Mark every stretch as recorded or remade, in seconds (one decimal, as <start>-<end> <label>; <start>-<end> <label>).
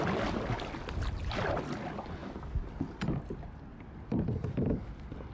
0.0-5.3 recorded